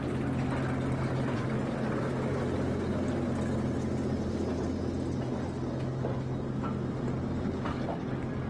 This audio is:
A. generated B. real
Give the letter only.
B